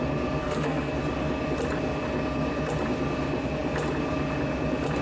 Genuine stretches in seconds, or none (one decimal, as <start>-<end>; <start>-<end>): 0.0-0.4; 0.9-5.0